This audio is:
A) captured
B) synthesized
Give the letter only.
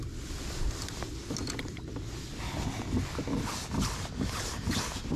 A